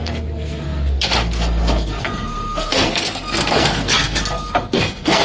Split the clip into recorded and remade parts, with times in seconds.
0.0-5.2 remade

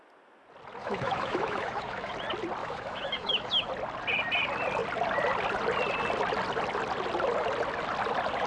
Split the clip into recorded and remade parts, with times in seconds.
0.0-0.8 recorded; 0.8-2.1 remade; 2.1-2.6 recorded; 2.6-3.7 remade; 3.7-8.5 recorded

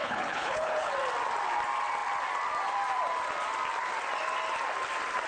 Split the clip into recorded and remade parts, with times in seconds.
0.0-0.9 remade; 0.9-5.3 recorded

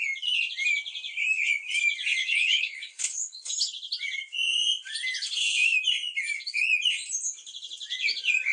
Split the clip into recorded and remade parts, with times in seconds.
0.0-2.2 recorded; 2.2-3.5 remade; 3.5-8.5 recorded

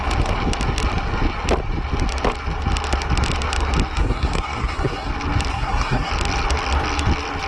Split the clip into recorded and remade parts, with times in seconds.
0.0-4.0 recorded; 4.0-5.1 remade; 5.1-5.5 recorded; 5.5-6.1 remade; 6.1-7.5 recorded

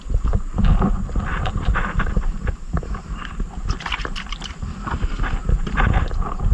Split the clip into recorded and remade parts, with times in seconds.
0.0-1.3 recorded; 1.3-4.7 remade; 4.7-5.4 recorded; 5.4-6.5 remade

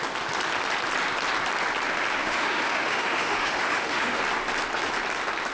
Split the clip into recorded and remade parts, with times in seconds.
0.0-2.2 recorded; 2.2-4.2 remade; 4.2-5.5 recorded

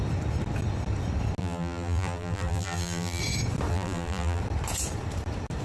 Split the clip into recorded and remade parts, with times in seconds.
0.0-1.4 recorded; 1.4-3.2 remade; 3.2-3.7 recorded; 3.7-4.4 remade; 4.4-5.6 recorded